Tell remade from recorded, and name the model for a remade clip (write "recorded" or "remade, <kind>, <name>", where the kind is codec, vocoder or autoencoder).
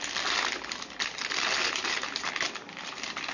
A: recorded